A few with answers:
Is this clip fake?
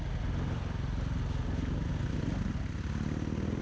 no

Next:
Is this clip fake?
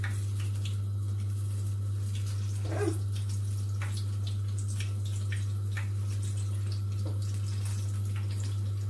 no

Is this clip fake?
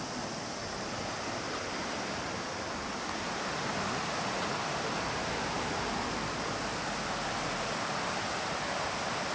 no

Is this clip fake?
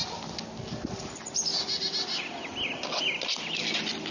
no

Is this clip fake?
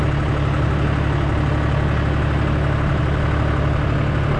no